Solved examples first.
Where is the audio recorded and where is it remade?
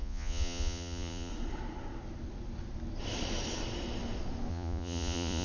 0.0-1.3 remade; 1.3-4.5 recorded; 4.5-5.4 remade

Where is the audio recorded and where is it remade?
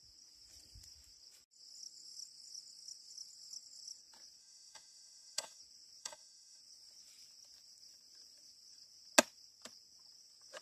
0.0-4.4 recorded; 4.4-5.6 remade; 5.6-6.0 recorded; 6.0-6.6 remade; 6.6-10.6 recorded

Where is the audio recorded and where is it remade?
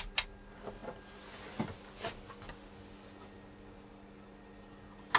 0.0-5.2 recorded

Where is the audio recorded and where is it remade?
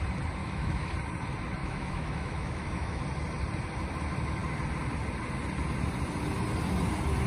0.0-0.4 recorded; 0.4-0.9 remade; 0.9-1.6 recorded; 1.6-3.0 remade; 3.0-7.3 recorded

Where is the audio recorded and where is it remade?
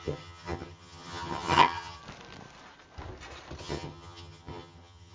0.0-2.0 remade; 2.0-3.6 recorded; 3.6-5.1 remade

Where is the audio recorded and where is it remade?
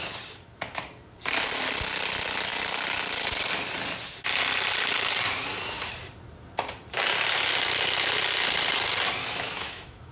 0.0-9.2 recorded; 9.2-10.1 remade